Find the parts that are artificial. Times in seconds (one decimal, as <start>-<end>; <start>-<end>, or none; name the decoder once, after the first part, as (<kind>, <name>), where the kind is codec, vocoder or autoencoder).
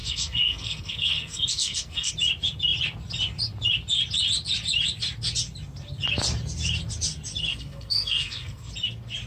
0.0-2.1 (codec, SNAC); 7.5-8.7